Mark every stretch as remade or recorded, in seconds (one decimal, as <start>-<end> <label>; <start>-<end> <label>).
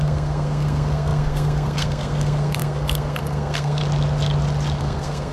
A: 0.0-3.8 remade; 3.8-4.8 recorded; 4.8-5.3 remade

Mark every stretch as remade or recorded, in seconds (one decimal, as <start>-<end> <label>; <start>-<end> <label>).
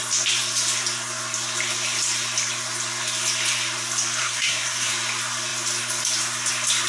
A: 0.0-4.2 recorded; 4.2-4.9 remade; 4.9-6.9 recorded